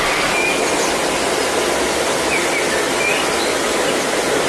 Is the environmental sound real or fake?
real